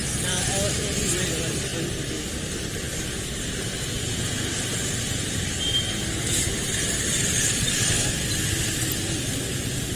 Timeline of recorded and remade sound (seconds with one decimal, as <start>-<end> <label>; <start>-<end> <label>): 0.0-10.0 recorded

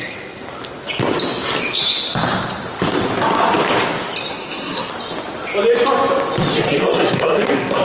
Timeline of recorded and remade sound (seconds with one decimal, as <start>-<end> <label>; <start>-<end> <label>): 0.0-4.3 recorded; 4.3-4.9 remade; 4.9-6.5 recorded; 6.5-7.8 remade

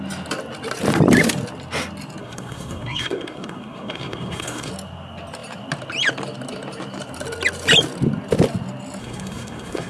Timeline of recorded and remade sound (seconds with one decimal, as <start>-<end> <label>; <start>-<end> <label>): 0.0-2.2 recorded; 2.2-4.7 remade; 4.7-9.0 recorded; 9.0-9.9 remade

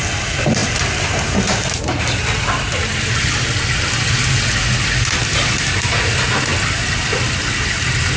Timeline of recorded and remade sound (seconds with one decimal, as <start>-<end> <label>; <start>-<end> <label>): 0.0-8.2 recorded

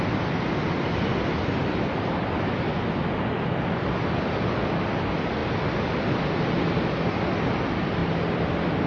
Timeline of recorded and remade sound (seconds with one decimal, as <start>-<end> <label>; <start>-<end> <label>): 0.0-8.9 recorded

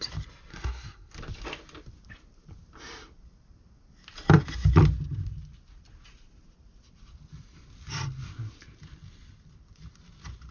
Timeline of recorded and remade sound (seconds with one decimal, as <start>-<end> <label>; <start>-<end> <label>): 0.0-0.5 recorded; 0.5-1.1 remade; 1.1-10.5 recorded

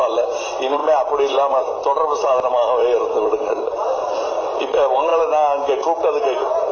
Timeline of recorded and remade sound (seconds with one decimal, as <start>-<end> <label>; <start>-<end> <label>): 0.0-5.1 remade; 5.1-6.7 recorded

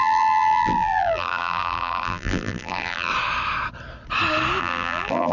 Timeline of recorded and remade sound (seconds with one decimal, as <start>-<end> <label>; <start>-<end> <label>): 0.0-3.1 remade; 3.1-4.6 recorded; 4.6-5.3 remade